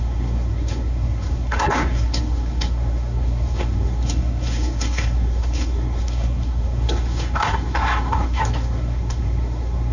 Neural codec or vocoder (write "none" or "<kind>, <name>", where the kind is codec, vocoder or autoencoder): codec, SNAC